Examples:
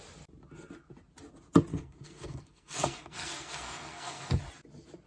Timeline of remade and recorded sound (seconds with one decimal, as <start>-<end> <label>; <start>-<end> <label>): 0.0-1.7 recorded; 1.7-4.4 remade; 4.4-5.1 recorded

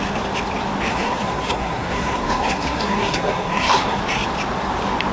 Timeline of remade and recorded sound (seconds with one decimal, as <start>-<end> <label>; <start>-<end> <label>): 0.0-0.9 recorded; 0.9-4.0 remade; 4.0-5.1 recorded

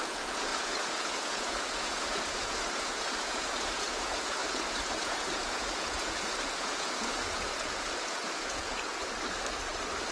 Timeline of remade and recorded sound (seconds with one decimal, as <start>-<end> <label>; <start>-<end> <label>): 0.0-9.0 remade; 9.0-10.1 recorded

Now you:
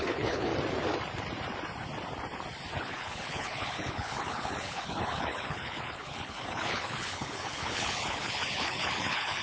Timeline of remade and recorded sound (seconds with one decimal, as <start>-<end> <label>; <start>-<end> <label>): 0.0-0.5 remade; 0.5-2.8 recorded; 2.8-9.4 remade